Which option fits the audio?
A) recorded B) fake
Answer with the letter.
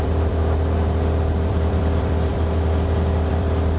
B